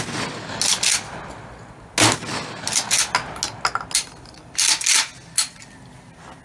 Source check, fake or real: real